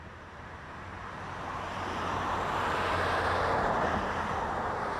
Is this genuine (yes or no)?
no